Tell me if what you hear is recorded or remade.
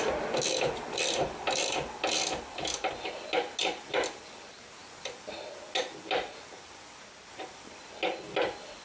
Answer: recorded